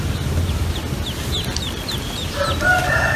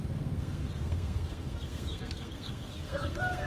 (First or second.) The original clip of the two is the first